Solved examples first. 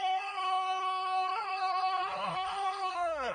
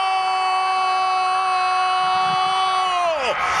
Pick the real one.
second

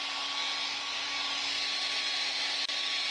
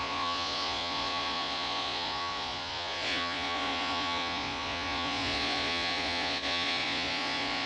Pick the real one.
first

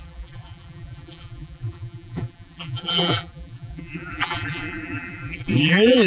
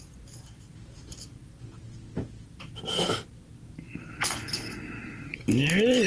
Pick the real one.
second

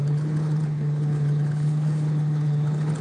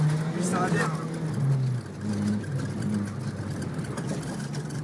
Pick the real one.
second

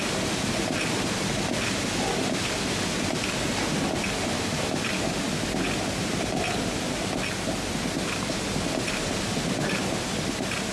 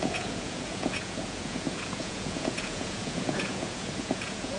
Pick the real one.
first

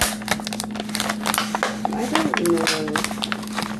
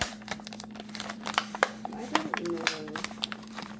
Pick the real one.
first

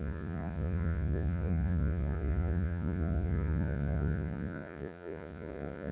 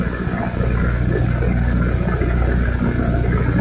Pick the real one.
second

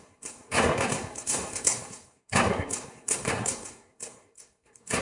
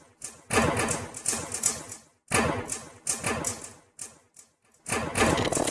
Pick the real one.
second